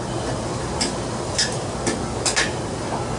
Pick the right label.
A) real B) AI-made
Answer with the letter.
A